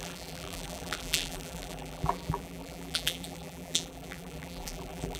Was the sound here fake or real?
fake